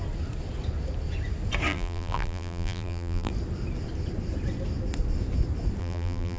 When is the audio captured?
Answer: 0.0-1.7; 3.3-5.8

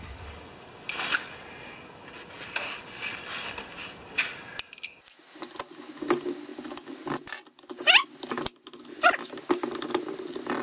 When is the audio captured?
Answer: 0.0-10.6

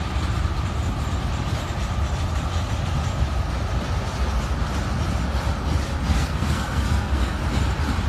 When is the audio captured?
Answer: 0.0-6.1; 7.4-8.1

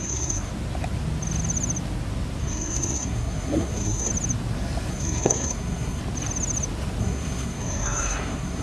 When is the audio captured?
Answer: 0.5-2.4; 4.1-4.9; 6.0-7.0